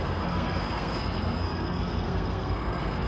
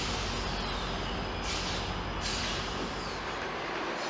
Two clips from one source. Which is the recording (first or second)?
second